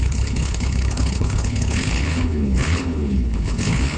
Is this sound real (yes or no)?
no